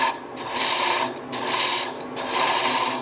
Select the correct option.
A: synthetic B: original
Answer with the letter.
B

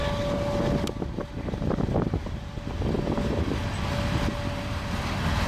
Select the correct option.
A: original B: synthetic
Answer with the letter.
A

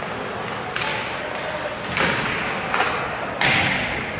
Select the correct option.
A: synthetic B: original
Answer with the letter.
B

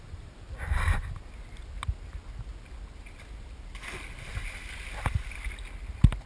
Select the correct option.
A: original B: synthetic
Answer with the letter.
A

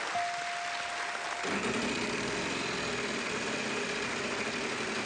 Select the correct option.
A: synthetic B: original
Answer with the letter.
B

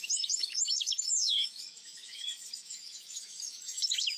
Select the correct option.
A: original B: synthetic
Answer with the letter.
B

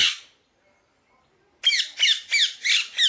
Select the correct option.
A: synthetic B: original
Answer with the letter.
B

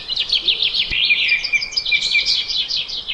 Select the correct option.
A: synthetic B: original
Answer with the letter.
B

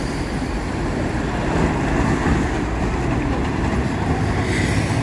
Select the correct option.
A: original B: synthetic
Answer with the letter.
A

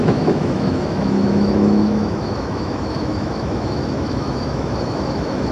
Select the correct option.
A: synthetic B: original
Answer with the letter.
A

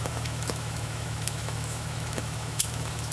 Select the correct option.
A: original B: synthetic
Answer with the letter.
B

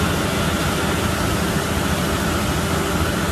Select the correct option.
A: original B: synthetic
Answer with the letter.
A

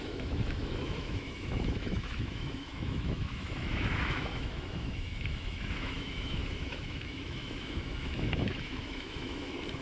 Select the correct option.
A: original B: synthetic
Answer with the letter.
B